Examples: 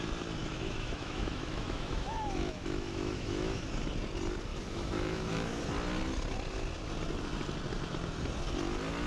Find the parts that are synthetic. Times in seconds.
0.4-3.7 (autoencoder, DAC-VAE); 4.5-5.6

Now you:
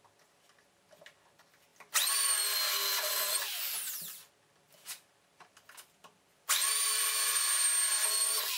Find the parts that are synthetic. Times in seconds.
none

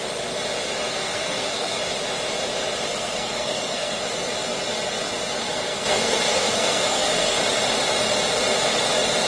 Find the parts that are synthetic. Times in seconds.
0.9-1.8 (codec, SNAC); 2.9-4.0; 5.4-7.4

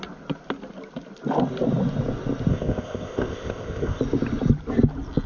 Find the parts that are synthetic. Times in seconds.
2.5-4.0 (codec, ZipCodec)